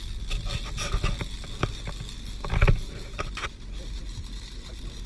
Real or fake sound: real